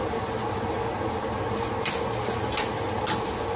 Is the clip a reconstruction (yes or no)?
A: no